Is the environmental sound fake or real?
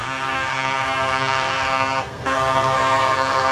fake